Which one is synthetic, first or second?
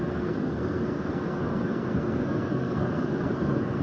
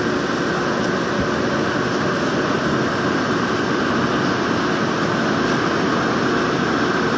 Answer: first